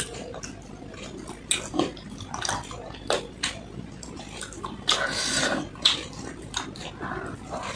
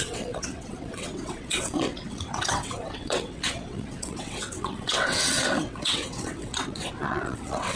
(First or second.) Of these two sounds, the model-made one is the second